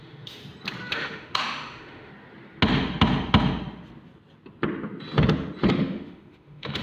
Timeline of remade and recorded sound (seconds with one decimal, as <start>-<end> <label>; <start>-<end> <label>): 0.0-0.4 remade; 0.4-0.9 recorded; 0.9-2.1 remade; 2.1-5.7 recorded; 5.7-6.8 remade